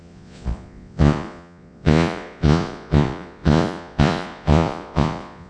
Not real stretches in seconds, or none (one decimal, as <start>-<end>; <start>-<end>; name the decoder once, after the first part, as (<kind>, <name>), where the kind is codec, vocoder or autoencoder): 0.0-5.5 (vocoder, Vocos)